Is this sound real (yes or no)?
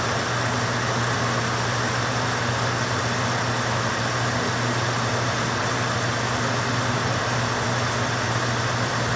yes